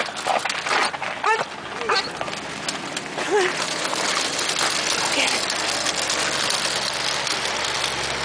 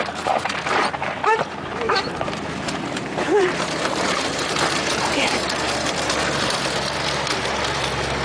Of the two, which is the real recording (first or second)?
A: first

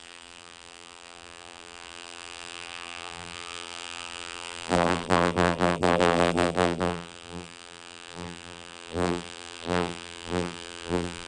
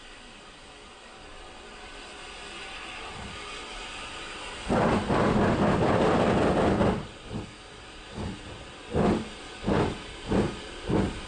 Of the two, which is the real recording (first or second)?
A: second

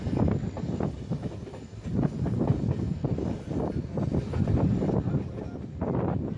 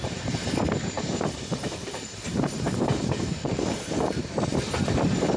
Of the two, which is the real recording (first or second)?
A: first